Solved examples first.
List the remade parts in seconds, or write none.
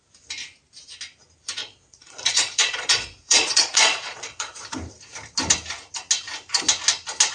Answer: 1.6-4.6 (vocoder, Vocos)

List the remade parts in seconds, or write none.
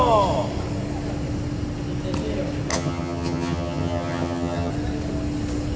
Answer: 2.7-4.7 (vocoder, HiFi-GAN)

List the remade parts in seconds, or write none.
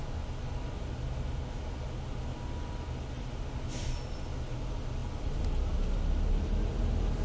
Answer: none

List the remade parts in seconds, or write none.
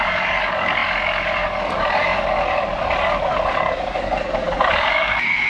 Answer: 0.0-5.5 (codec, DAC)